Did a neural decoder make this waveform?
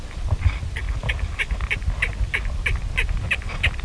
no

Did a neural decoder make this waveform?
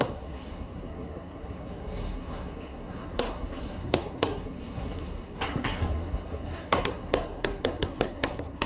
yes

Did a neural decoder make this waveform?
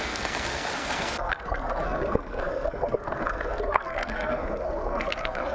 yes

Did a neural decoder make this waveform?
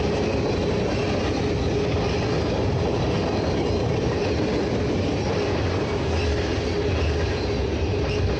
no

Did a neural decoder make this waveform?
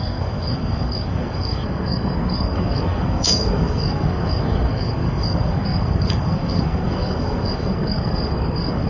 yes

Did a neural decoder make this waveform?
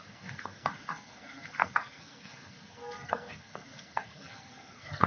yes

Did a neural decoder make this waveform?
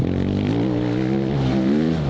no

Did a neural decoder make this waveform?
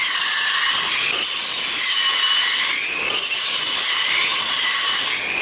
no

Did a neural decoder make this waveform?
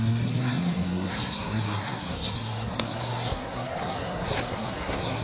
yes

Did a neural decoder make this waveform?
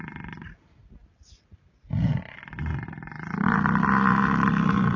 no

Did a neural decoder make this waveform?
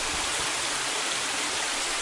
no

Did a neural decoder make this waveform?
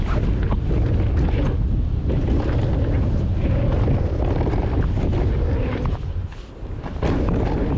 no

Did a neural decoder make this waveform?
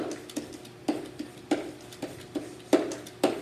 no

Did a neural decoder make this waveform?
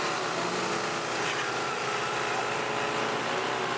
no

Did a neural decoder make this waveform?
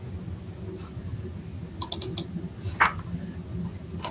no